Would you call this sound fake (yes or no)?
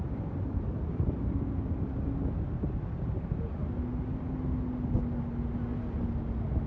no